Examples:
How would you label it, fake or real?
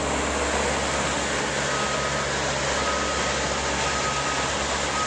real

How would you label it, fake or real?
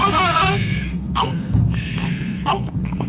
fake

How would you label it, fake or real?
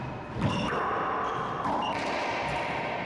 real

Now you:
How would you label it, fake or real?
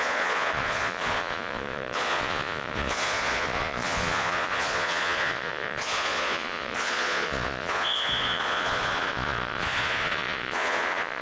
fake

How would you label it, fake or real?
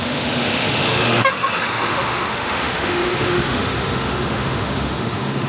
fake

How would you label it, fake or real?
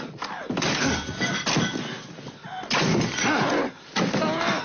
real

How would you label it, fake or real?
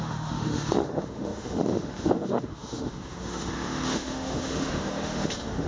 fake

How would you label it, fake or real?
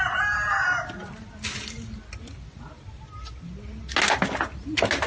real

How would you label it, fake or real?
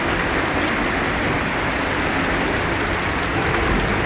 real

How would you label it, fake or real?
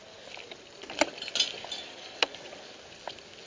real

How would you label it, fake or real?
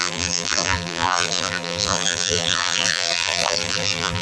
fake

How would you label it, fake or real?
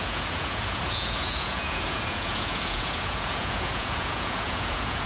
fake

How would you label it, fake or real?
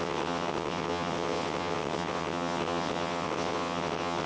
fake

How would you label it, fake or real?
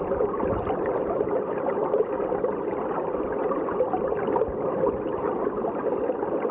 real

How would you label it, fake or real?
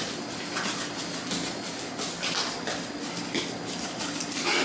real